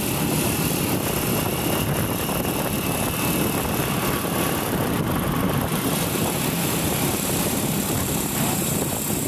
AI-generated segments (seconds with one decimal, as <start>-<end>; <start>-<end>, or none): 5.7-9.3